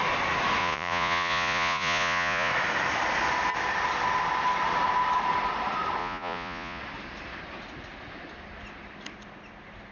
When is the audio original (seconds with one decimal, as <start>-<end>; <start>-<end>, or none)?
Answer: 0.0-0.6; 2.5-6.0; 6.8-9.9